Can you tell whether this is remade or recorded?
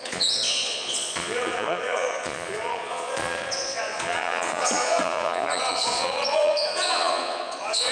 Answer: remade